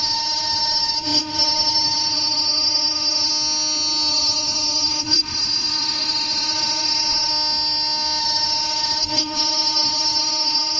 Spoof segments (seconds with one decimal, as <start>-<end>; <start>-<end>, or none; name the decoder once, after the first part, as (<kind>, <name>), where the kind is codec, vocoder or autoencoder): 0.0-3.3 (autoencoder, DAC-VAE); 4.1-7.3; 8.2-10.8